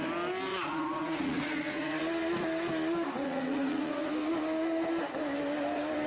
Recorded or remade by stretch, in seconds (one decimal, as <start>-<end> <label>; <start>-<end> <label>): 0.0-0.5 recorded; 0.5-2.0 remade; 2.0-3.2 recorded; 3.2-4.1 remade; 4.1-6.1 recorded